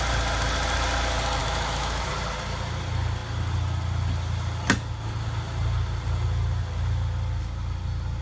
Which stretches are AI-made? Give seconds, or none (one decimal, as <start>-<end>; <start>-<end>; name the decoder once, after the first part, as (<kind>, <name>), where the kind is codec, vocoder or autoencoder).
1.4-2.1 (autoencoder, DAC-VAE)